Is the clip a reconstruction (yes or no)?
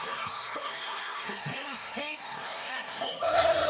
yes